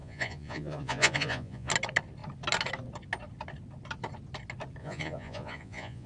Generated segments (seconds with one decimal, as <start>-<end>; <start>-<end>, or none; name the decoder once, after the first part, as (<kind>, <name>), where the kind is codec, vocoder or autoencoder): 0.0-1.7 (vocoder, Vocos); 4.8-6.1